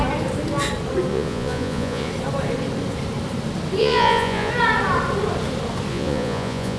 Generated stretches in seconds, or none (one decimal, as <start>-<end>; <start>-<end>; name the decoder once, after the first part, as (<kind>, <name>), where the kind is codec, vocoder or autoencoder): 1.1-2.1 (vocoder, Vocos); 3.8-4.5; 5.9-6.8